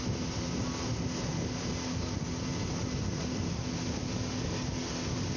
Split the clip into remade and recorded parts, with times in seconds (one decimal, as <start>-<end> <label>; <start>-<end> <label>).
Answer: 0.0-5.4 recorded